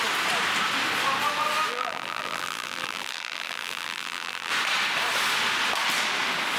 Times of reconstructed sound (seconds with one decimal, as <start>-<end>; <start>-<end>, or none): 1.7-4.5